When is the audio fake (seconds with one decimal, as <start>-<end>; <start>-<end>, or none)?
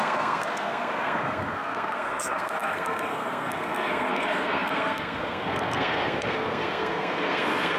0.0-7.8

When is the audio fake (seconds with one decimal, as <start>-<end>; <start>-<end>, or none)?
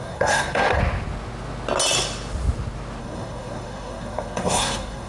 0.0-0.8; 3.0-5.1